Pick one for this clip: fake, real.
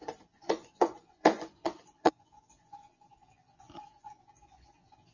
fake